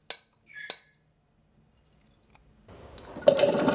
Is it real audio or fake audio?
real